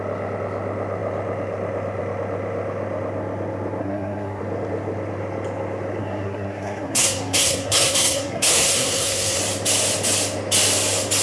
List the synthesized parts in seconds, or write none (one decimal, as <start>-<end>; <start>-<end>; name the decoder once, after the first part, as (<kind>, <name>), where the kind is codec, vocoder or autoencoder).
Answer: 3.8-4.4 (codec, SNAC); 6.0-9.4